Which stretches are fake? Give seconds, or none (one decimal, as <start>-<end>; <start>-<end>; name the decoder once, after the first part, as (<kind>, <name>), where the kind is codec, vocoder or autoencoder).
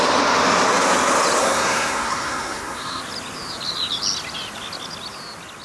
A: 1.4-3.0 (codec, SNAC)